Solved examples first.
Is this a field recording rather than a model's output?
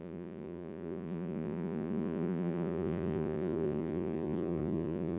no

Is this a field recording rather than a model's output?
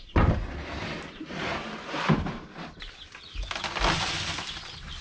no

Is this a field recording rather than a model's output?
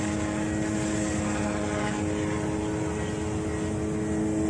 yes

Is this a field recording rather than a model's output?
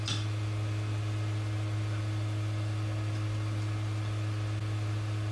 yes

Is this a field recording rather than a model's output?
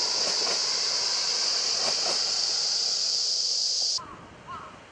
yes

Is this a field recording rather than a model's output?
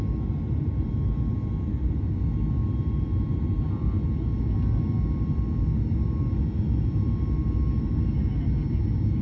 yes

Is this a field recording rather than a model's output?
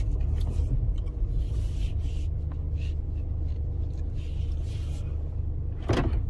yes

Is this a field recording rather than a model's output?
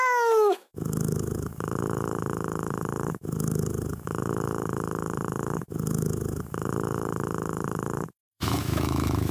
no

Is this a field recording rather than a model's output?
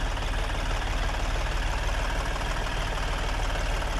yes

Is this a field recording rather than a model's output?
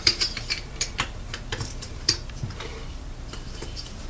no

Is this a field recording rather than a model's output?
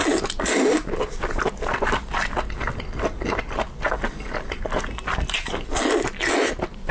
yes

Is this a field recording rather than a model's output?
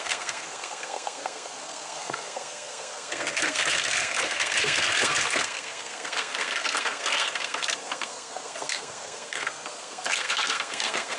no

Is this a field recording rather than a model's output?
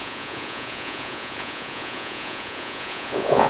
no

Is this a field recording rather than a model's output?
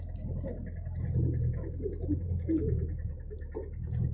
yes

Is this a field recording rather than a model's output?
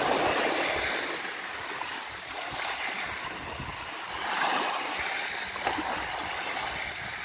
yes